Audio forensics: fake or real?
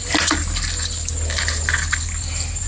real